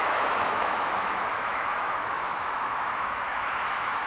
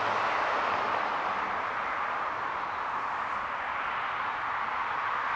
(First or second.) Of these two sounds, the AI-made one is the first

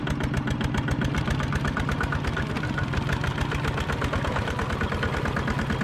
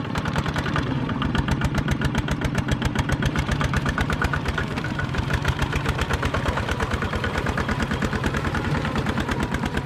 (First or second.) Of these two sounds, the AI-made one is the second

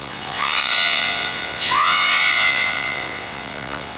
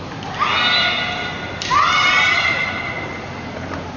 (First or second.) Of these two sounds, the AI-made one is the first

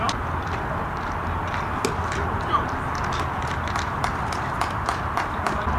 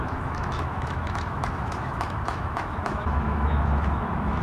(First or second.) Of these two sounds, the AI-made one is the second